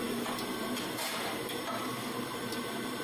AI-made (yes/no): yes